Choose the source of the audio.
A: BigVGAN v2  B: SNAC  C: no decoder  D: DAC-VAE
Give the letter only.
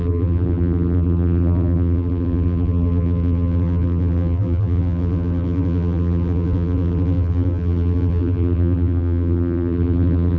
A